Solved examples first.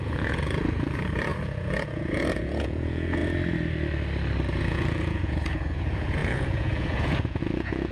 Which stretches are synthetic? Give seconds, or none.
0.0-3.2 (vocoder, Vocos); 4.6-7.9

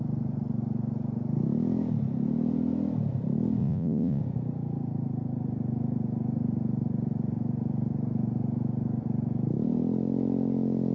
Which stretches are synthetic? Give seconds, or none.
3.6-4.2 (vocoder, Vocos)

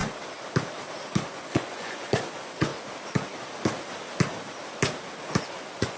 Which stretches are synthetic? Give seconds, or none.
1.3-2.7 (vocoder, Vocos); 5.4-6.0

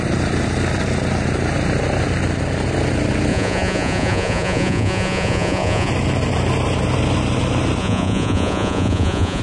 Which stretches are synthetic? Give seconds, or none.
3.3-5.9 (vocoder, Vocos); 7.8-9.4

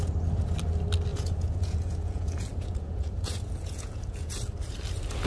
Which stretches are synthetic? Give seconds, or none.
1.1-4.3 (vocoder, Vocos)